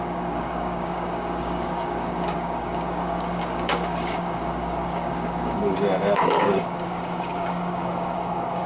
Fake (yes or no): yes